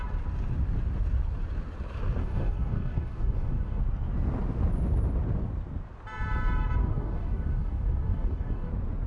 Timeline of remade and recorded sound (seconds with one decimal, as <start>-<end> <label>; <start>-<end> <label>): 0.0-2.2 recorded; 2.2-3.8 remade; 3.8-6.8 recorded; 6.8-8.7 remade; 8.7-9.1 recorded